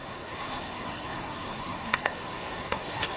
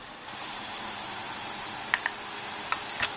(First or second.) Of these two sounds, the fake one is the first